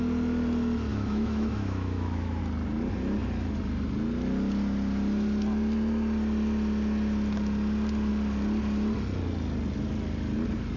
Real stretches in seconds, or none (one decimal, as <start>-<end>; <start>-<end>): 0.0-0.9; 2.4-10.8